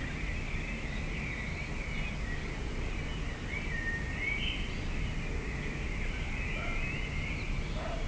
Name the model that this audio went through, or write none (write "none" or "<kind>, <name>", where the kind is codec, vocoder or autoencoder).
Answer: none